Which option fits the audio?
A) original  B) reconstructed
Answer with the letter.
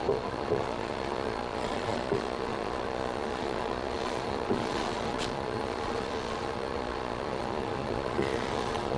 B